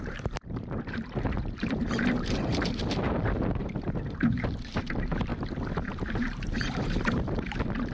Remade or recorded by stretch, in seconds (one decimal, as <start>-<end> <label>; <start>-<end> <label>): 0.0-5.3 remade; 5.3-5.8 recorded; 5.8-7.9 remade